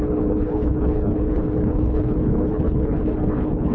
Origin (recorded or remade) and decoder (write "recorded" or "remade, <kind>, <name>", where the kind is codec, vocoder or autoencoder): remade, codec, HILCodec